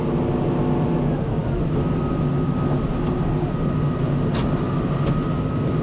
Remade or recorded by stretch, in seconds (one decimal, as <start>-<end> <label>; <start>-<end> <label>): 0.0-5.8 recorded

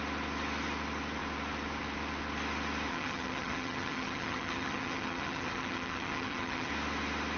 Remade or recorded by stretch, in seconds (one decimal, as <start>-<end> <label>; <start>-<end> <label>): 0.0-2.9 recorded; 2.9-6.7 remade; 6.7-7.4 recorded

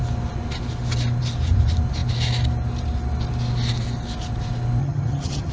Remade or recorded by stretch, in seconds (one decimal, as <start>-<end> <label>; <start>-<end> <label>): 0.0-4.8 recorded; 4.8-5.5 remade

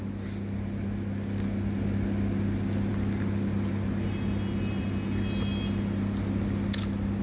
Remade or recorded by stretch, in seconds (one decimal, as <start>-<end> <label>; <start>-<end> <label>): 0.0-7.2 recorded

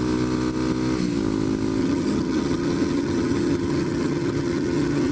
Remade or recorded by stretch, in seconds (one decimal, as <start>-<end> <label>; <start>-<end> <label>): 0.0-1.8 recorded; 1.8-5.1 remade

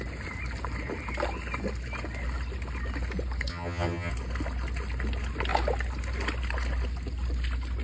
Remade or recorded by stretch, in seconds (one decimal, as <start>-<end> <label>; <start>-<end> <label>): 0.0-3.5 recorded; 3.5-4.1 remade; 4.1-7.8 recorded